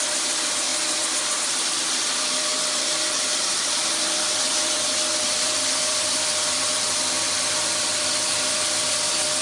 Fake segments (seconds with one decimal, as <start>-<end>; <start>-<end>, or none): 0.0-0.7; 1.4-9.4